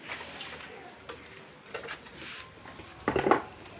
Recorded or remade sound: recorded